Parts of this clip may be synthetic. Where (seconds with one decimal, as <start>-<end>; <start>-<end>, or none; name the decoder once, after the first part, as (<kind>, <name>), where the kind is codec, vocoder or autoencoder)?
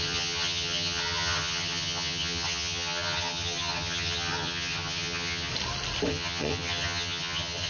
0.0-5.5 (vocoder, HiFi-GAN); 6.1-7.7